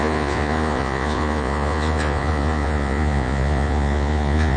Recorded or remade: remade